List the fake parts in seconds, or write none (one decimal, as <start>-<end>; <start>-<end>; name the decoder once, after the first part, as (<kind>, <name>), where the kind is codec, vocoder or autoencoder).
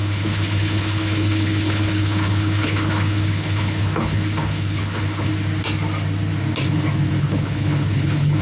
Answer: 0.0-5.3 (codec, HILCodec); 7.1-8.4